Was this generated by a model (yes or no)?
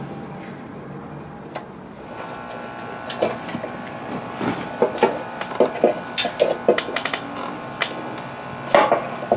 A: no